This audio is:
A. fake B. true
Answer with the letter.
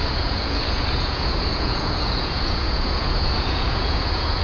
A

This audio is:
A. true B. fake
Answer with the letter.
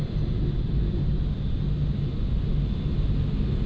A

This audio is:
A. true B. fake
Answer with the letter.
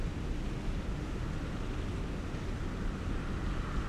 A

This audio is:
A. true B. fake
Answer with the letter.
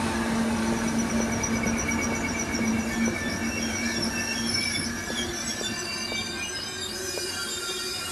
A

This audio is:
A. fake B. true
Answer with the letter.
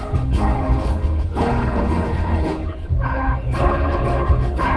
A